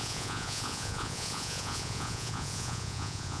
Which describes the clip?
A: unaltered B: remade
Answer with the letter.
B